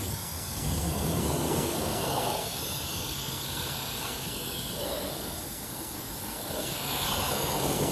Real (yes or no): no